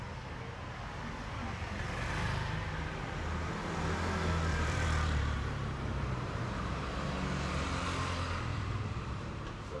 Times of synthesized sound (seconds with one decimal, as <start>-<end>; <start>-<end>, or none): 4.5-7.1; 8.5-9.8